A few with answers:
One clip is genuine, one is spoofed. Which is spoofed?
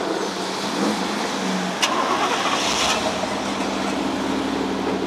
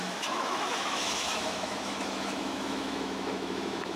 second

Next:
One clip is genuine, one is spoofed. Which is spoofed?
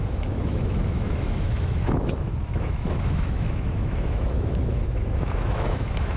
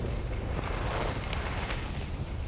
first